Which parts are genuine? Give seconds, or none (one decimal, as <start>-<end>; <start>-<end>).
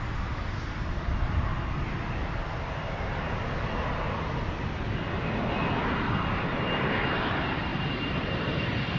1.5-6.1